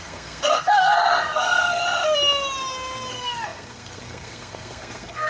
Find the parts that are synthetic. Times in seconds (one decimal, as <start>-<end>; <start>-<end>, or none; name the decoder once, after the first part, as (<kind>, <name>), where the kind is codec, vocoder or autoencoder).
0.0-1.8 (codec, SNAC); 3.1-5.3